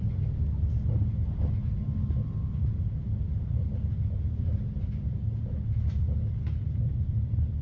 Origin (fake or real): real